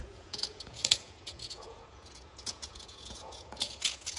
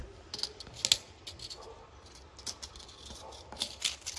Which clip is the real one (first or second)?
second